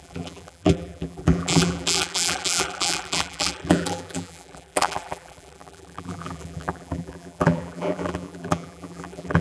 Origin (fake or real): fake